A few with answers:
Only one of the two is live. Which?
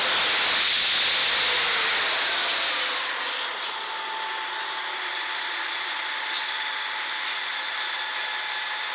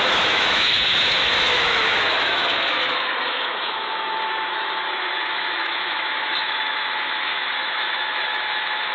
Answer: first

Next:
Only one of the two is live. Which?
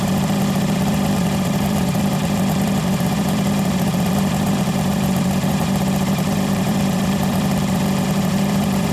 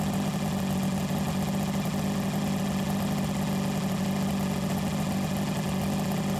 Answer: second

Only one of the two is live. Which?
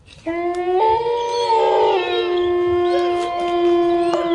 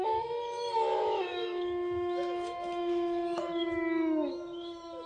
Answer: first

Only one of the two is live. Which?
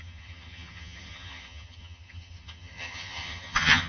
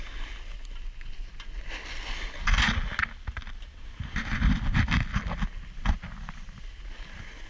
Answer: second